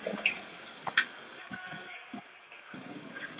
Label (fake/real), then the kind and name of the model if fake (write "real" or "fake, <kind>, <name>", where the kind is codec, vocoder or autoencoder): fake, codec, DAC